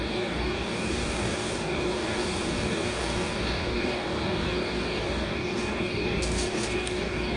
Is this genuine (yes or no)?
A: no